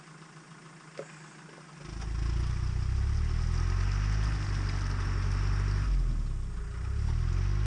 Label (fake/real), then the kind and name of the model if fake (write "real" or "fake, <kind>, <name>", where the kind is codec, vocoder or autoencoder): real